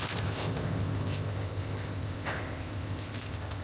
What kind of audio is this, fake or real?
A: fake